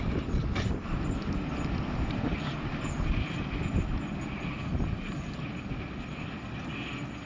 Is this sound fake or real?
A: real